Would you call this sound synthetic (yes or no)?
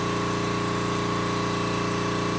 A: no